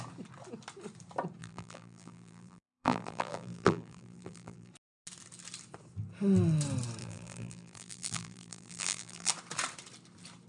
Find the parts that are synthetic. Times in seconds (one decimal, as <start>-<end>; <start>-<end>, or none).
1.4-4.7; 7.0-9.3